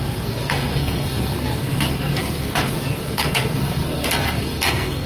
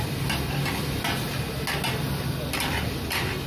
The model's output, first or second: first